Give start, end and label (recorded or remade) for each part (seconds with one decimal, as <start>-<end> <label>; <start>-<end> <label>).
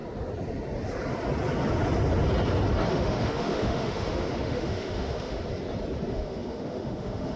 0.0-2.9 recorded; 2.9-5.4 remade; 5.4-6.1 recorded; 6.1-7.4 remade